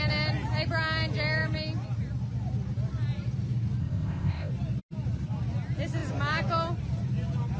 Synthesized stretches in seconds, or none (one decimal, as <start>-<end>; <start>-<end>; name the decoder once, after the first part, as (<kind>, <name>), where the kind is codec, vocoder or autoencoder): 3.8-4.5 (codec, ZipCodec)